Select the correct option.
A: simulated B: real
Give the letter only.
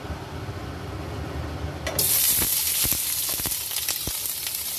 B